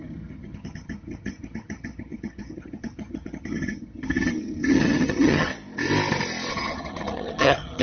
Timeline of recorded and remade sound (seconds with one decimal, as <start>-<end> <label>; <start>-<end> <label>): 0.0-5.5 remade; 5.5-6.5 recorded; 6.5-7.8 remade